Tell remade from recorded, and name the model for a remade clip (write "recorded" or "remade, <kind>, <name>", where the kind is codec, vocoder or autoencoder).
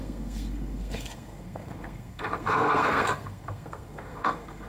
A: remade, codec, SNAC